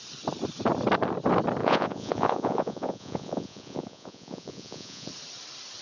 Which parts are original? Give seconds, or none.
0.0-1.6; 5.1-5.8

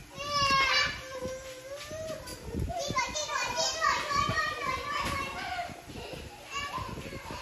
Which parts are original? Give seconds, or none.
0.0-7.4

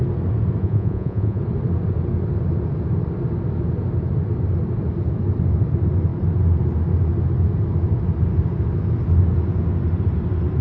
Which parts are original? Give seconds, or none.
0.0-0.6; 1.4-10.6

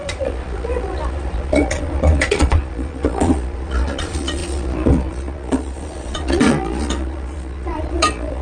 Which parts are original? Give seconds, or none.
none

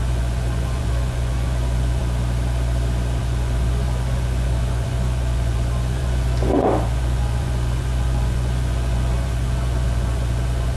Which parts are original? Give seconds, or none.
2.0-3.2

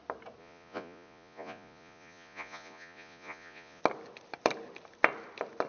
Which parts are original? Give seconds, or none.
0.0-0.4; 3.8-5.7

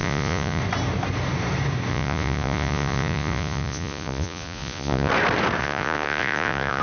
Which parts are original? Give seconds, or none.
0.6-1.9; 5.1-5.6